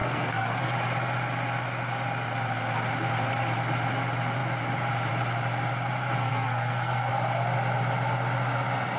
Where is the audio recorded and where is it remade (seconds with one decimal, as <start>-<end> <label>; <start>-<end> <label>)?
0.0-0.6 remade; 0.6-6.2 recorded; 6.2-7.1 remade; 7.1-9.0 recorded